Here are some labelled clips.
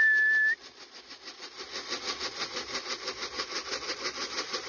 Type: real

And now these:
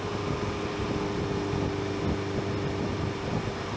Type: real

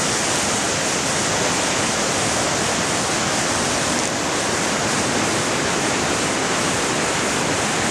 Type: real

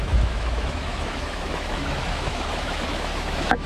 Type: fake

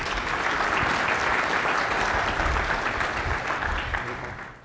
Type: real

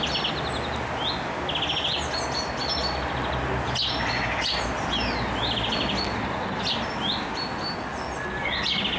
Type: real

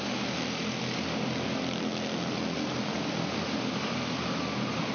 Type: real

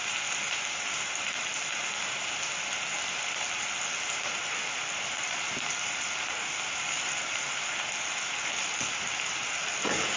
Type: real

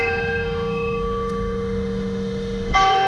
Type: fake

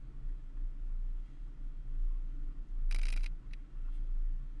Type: real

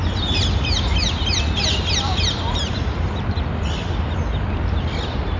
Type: real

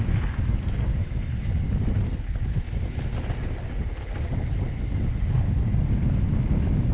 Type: real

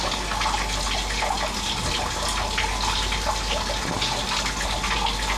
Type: real